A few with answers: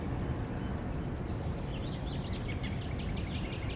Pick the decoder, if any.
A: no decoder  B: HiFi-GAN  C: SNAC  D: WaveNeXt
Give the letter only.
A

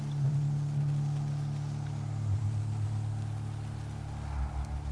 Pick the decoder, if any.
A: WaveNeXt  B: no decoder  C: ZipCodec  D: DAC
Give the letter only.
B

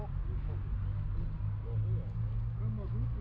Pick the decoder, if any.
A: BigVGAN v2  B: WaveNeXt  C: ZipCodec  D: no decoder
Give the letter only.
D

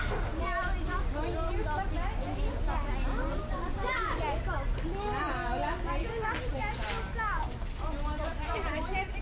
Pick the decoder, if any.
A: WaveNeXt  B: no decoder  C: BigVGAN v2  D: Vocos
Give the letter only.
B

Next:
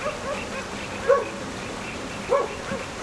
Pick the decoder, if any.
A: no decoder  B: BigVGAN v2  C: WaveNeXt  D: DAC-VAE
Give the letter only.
A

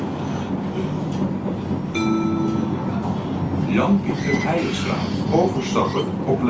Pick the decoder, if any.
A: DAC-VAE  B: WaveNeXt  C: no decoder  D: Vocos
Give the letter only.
C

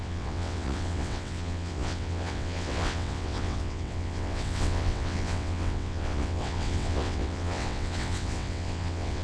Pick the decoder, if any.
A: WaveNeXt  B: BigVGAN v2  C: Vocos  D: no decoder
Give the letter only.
A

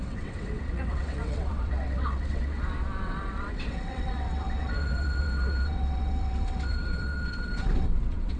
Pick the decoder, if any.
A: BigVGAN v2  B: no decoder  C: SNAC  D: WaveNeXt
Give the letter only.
D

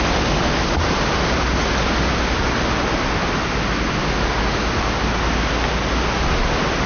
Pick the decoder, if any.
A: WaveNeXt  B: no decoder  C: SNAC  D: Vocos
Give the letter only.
B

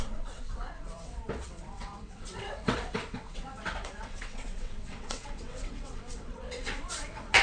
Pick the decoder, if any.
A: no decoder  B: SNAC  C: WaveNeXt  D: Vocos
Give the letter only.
C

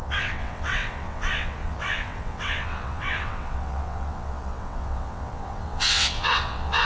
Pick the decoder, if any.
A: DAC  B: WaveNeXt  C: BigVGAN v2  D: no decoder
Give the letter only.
B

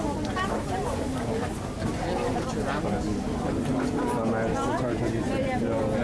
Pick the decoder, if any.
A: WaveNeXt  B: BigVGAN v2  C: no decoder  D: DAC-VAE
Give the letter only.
C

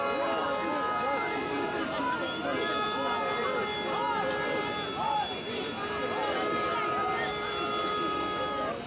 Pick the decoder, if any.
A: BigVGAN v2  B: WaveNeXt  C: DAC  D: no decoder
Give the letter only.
D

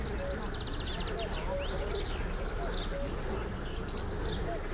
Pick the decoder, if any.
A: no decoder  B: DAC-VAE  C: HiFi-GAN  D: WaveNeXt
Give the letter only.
A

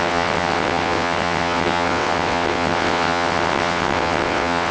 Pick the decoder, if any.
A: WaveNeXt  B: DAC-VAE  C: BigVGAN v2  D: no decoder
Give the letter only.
A